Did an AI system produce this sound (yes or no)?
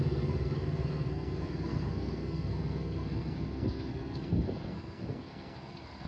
yes